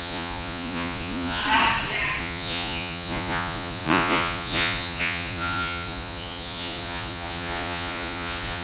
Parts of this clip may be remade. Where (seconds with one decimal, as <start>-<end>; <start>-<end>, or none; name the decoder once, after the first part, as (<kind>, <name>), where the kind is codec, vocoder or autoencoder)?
0.0-1.4 (vocoder, Vocos); 2.2-8.6